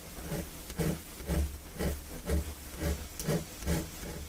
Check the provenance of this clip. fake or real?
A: real